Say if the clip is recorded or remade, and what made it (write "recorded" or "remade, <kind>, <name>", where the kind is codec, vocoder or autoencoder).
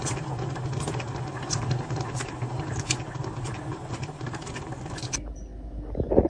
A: recorded